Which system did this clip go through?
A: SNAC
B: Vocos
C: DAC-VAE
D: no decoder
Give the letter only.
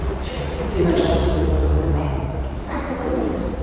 B